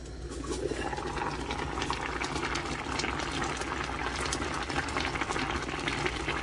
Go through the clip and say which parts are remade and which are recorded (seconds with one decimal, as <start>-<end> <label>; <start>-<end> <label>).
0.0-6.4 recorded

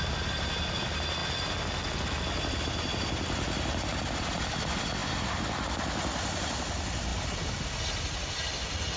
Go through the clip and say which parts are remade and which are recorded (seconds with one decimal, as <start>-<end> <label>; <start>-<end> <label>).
0.0-9.0 recorded

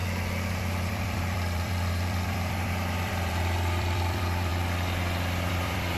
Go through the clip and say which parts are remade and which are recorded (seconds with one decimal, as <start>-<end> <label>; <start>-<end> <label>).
0.0-0.6 recorded; 0.6-4.5 remade; 4.5-5.5 recorded; 5.5-6.0 remade

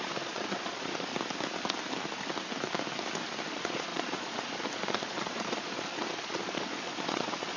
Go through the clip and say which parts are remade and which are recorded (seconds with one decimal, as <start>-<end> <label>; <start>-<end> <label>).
0.0-1.1 remade; 1.1-3.5 recorded; 3.5-7.6 remade

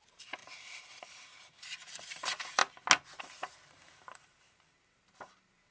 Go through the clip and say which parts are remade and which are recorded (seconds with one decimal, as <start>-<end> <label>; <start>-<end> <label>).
0.0-2.6 remade; 2.6-3.2 recorded; 3.2-5.7 remade